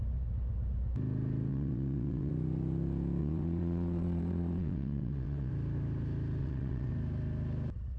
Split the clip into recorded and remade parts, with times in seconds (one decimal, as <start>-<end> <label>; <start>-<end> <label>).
0.0-1.5 recorded; 1.5-2.3 remade; 2.3-3.2 recorded; 3.2-5.5 remade; 5.5-6.4 recorded; 6.4-6.9 remade; 6.9-8.0 recorded